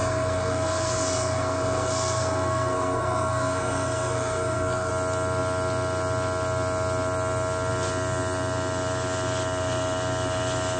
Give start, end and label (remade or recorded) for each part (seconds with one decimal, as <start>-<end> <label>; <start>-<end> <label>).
0.0-4.9 remade; 4.9-10.8 recorded